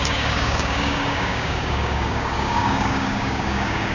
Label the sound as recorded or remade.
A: remade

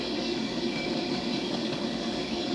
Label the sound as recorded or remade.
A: remade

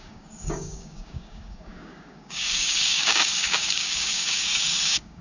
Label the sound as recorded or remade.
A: remade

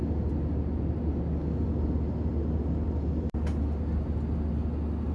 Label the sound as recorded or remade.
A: recorded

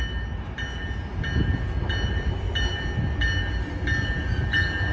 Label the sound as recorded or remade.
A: recorded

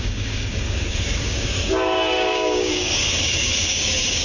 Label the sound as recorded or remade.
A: remade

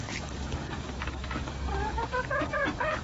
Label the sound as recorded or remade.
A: remade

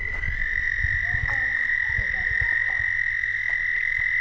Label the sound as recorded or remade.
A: recorded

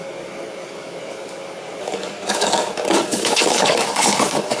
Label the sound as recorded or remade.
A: remade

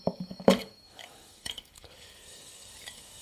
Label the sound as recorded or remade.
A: remade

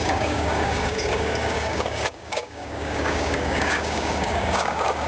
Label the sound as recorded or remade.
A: remade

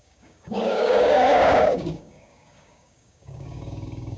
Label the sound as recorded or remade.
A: remade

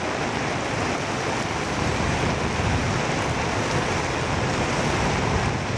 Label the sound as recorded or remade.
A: recorded